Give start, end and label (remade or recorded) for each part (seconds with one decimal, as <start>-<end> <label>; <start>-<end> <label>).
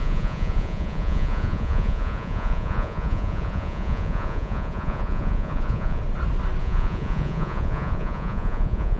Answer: 0.0-6.0 remade; 6.0-6.6 recorded; 6.6-9.0 remade